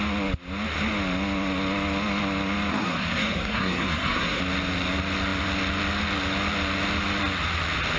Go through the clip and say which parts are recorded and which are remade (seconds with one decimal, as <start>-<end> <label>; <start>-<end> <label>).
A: 0.0-2.7 recorded; 2.7-4.4 remade; 4.4-8.0 recorded